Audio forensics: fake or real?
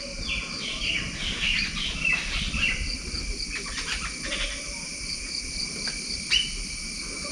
fake